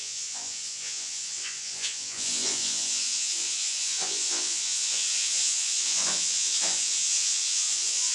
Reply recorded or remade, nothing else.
remade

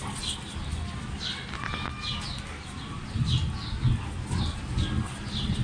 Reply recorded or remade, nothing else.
recorded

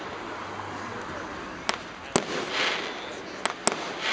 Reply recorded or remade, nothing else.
recorded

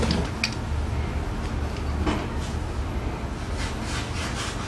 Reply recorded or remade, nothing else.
recorded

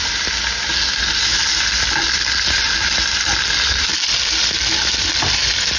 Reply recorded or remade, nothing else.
recorded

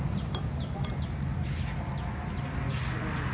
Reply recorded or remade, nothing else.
recorded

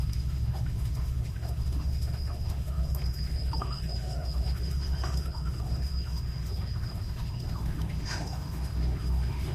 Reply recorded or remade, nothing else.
remade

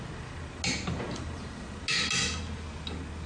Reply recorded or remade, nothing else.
recorded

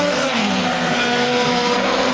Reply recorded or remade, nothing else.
remade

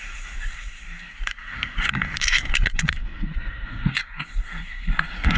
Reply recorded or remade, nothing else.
remade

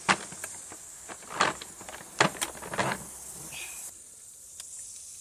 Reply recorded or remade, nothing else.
recorded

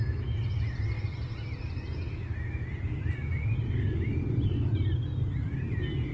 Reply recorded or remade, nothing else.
recorded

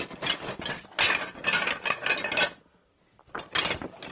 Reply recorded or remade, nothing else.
recorded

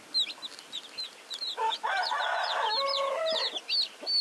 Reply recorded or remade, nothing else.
recorded